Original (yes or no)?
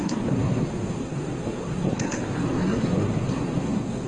no